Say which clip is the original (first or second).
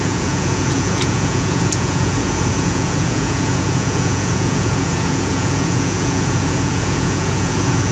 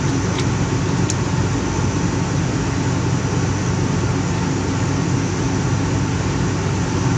second